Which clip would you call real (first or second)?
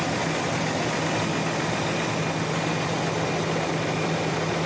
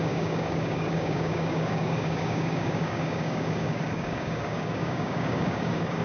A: first